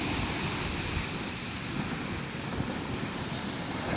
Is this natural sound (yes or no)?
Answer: yes